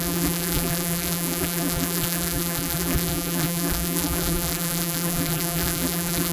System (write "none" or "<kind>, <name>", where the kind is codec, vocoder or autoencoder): vocoder, BigVGAN v2